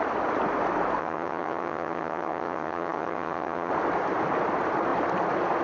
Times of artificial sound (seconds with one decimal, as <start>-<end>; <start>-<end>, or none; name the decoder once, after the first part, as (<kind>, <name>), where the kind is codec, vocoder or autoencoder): 1.0-3.7 (vocoder, HiFi-GAN)